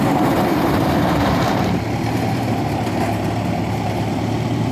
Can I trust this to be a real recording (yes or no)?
no